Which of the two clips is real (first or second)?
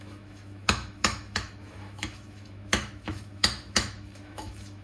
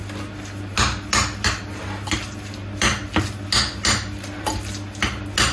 second